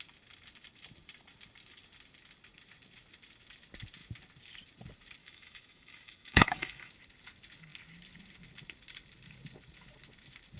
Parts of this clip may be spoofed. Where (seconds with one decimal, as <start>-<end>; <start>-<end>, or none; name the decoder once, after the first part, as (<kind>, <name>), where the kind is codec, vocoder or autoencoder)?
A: 5.2-6.9 (autoencoder, DAC-VAE)